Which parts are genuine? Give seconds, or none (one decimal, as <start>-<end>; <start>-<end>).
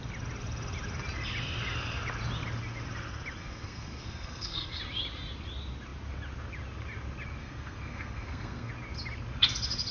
0.0-3.4; 4.8-7.4; 8.7-9.9